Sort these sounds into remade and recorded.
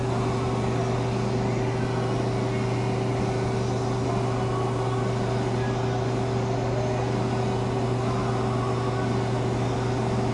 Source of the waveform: recorded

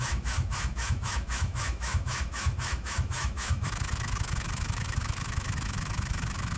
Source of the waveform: remade